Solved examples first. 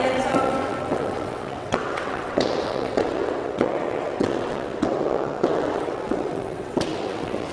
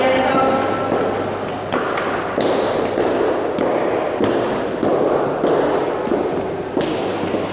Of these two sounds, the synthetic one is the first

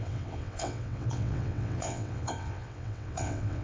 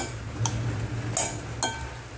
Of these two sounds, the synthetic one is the first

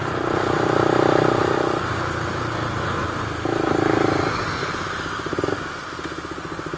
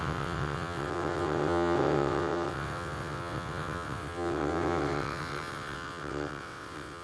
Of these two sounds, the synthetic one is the second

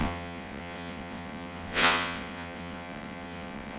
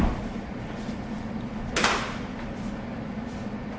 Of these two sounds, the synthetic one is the first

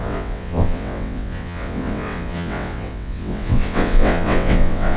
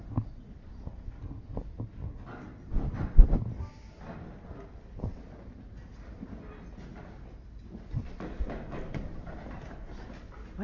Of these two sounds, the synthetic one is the first